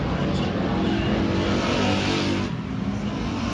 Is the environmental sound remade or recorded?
recorded